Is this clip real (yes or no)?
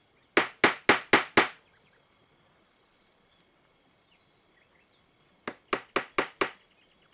yes